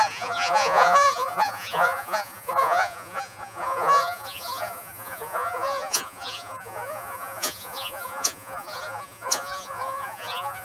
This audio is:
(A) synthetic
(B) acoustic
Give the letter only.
A